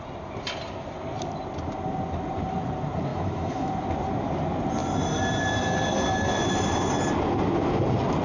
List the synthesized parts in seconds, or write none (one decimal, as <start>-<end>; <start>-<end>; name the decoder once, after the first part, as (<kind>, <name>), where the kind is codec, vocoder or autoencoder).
3.1-3.7 (autoencoder, DAC-VAE)